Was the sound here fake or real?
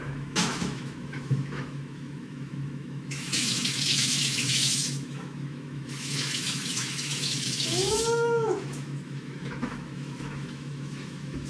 fake